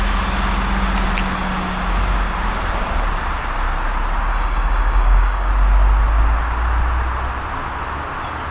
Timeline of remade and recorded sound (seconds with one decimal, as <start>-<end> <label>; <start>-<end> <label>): 0.0-4.3 recorded; 4.3-5.5 remade; 5.5-8.5 recorded